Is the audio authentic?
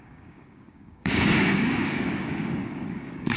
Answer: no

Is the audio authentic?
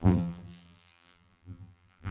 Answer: no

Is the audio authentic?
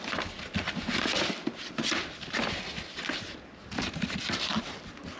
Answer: yes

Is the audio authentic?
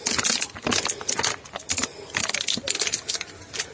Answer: yes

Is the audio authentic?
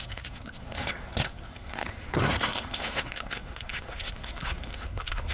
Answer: no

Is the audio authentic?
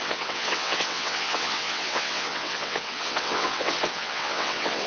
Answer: no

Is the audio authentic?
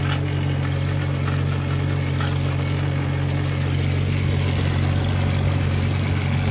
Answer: yes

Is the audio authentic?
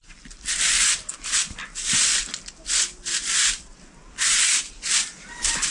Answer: no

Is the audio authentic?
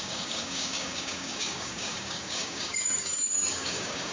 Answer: no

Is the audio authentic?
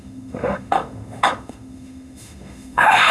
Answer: no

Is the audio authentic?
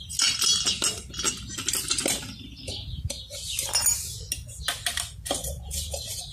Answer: yes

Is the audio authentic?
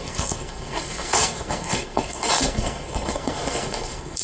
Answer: no